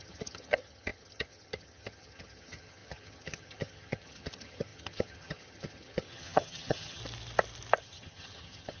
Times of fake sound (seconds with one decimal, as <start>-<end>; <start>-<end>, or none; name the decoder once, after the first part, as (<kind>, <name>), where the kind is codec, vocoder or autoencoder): 0.0-7.0 (vocoder, HiFi-GAN); 7.8-8.8